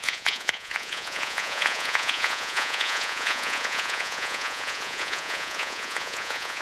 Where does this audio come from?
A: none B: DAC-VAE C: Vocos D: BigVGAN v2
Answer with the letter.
C